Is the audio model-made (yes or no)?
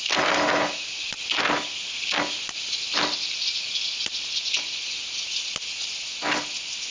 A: no